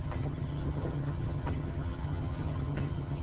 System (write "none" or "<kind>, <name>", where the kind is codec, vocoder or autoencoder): vocoder, HiFi-GAN